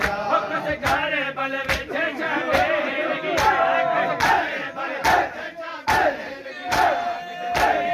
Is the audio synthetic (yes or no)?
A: no